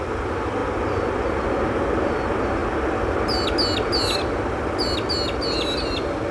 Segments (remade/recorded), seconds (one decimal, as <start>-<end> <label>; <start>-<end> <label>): 0.0-6.3 recorded